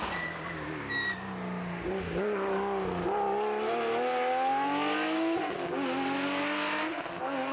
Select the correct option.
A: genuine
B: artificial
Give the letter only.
A